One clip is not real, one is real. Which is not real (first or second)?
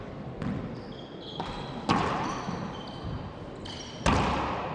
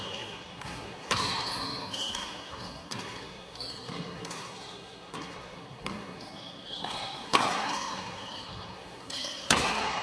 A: second